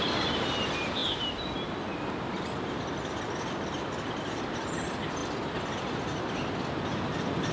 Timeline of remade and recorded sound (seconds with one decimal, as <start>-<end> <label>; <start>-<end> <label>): 0.0-7.5 recorded